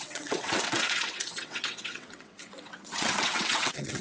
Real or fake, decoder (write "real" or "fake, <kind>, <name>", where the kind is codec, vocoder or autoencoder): fake, vocoder, WaveNeXt